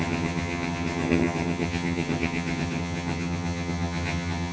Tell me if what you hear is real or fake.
fake